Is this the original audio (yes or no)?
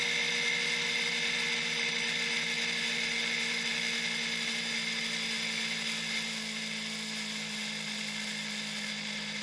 yes